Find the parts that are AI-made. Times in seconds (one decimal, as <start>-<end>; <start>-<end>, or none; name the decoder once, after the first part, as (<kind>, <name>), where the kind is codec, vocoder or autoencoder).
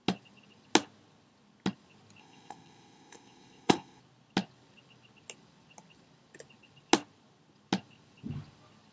2.2-4.0 (codec, ZipCodec)